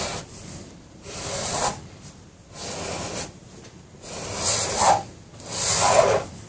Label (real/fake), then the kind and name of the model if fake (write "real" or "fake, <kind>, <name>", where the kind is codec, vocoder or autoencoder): real